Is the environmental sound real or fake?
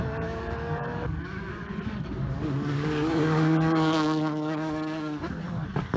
fake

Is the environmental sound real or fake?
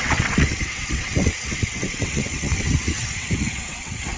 fake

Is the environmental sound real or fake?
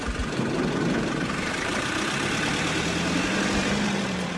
fake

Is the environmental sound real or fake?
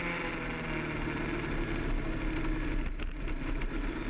real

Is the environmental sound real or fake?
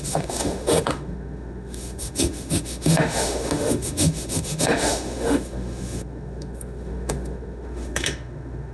fake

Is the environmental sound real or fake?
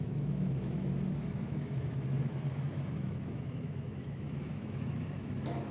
fake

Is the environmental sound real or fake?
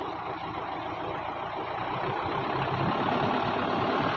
real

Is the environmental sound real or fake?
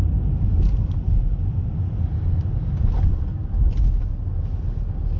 real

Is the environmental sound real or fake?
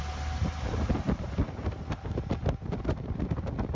real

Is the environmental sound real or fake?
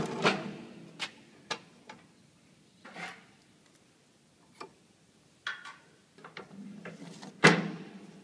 real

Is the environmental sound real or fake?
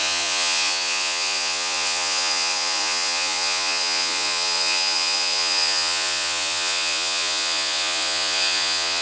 fake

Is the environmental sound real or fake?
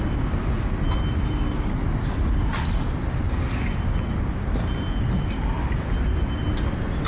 real